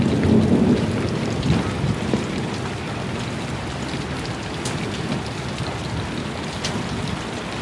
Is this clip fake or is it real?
real